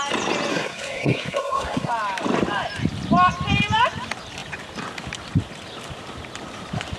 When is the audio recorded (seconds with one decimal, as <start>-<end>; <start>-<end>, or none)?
0.0-0.5; 1.9-7.0